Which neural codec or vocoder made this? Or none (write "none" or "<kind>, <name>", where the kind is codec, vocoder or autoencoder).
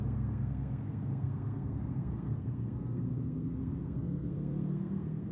codec, SNAC